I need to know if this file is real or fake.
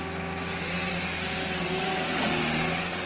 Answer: real